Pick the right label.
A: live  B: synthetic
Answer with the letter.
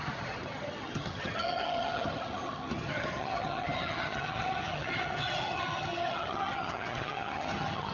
B